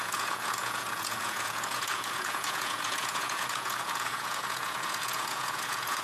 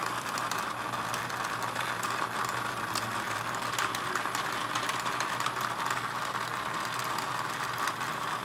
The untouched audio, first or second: second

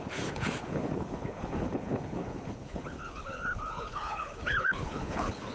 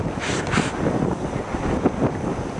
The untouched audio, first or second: second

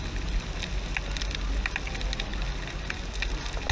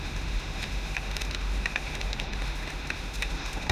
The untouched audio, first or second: first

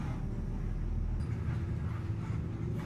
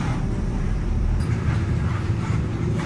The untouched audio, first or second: first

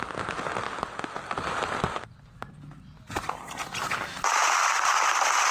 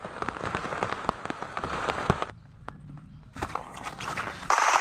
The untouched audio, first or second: first